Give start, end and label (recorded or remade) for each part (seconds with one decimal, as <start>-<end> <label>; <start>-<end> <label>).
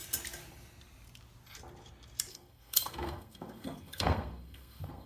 0.0-2.3 recorded; 2.3-5.1 remade